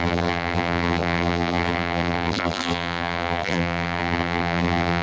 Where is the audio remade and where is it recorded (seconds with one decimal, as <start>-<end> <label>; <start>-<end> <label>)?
0.0-5.0 remade